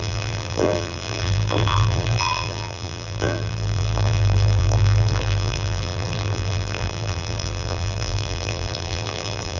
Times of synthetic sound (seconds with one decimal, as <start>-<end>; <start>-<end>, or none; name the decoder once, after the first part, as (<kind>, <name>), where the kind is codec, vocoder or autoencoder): 0.0-9.6 (vocoder, BigVGAN v2)